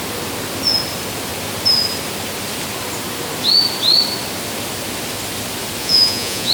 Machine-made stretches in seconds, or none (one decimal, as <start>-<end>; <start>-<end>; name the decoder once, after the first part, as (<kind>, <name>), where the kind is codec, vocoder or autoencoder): 5.8-6.5 (vocoder, Vocos)